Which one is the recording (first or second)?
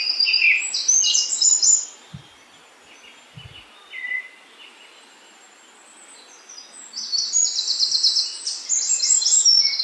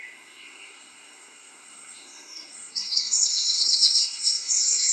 first